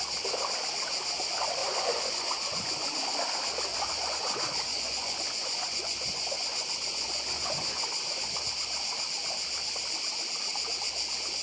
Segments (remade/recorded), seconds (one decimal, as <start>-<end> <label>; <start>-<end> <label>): 0.0-1.6 recorded; 1.6-3.2 remade; 3.2-3.7 recorded; 3.7-8.4 remade; 8.4-11.4 recorded